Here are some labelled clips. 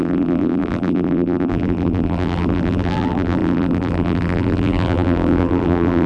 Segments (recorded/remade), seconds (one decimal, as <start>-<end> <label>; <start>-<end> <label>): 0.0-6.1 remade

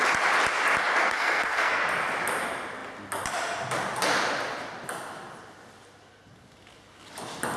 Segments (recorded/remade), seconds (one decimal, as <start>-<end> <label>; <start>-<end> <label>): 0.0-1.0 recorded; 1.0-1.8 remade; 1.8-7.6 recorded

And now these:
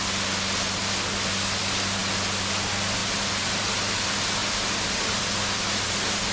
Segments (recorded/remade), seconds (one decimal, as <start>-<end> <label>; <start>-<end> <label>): 0.0-3.0 recorded; 3.0-3.7 remade; 3.7-6.3 recorded